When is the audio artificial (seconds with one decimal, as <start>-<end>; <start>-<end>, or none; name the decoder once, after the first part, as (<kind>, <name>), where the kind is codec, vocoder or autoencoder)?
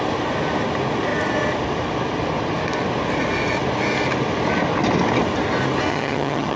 5.9-6.6 (vocoder, HiFi-GAN)